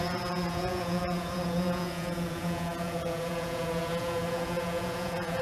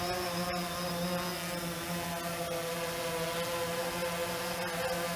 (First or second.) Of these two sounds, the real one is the second